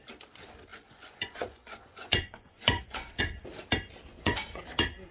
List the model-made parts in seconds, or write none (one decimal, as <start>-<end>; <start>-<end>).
0.7-3.2; 4.1-4.6